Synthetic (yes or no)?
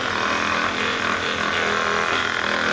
no